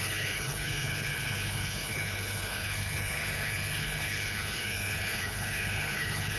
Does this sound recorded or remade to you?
remade